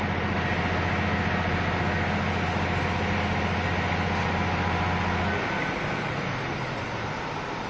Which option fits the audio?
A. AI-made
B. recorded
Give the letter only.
B